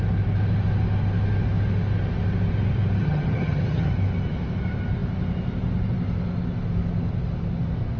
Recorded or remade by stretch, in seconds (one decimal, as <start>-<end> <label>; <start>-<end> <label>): 0.0-3.0 recorded; 3.0-3.9 remade; 3.9-8.0 recorded